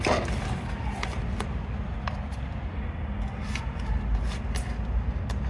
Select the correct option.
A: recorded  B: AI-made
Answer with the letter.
A